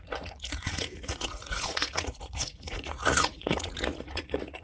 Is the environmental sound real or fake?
fake